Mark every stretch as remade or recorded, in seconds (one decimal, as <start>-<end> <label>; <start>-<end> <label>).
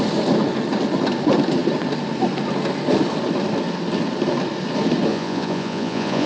0.0-5.1 recorded; 5.1-6.3 remade